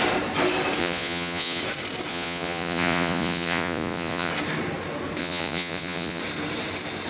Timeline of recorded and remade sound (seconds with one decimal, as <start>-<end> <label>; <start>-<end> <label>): 0.0-0.8 recorded; 0.8-1.6 remade; 1.6-2.1 recorded; 2.1-4.3 remade; 4.3-5.2 recorded; 5.2-6.2 remade; 6.2-7.1 recorded